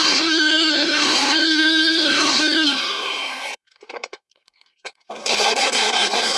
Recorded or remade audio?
remade